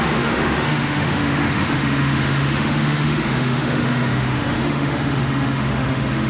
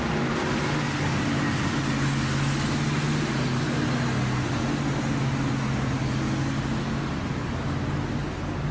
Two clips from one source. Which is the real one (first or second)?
second